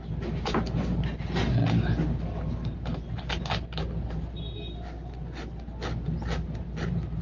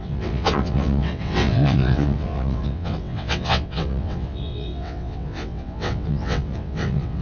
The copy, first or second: second